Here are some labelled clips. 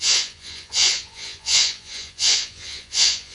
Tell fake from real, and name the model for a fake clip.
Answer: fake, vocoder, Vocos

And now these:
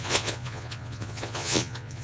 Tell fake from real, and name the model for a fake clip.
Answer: fake, vocoder, Vocos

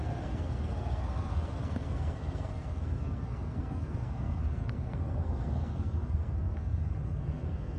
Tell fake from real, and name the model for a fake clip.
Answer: fake, codec, SNAC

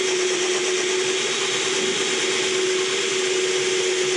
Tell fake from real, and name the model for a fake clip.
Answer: real